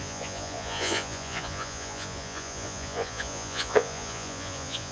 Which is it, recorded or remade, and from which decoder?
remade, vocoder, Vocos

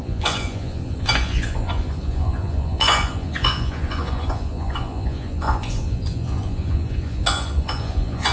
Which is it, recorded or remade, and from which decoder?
remade, vocoder, Vocos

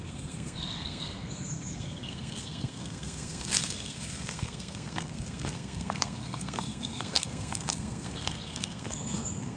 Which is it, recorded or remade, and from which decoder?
remade, codec, SNAC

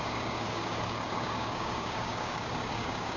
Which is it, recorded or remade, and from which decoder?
remade, codec, DAC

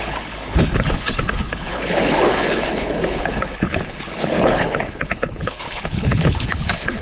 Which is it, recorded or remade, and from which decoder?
remade, codec, HILCodec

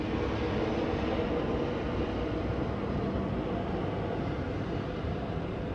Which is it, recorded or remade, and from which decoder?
recorded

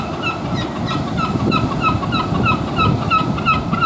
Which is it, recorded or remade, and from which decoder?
recorded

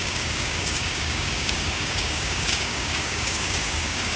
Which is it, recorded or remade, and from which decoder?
remade, codec, DAC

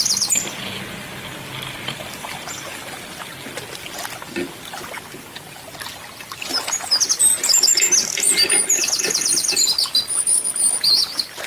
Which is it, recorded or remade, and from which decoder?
recorded